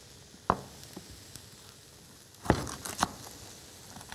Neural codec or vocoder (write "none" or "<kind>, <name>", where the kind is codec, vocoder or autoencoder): none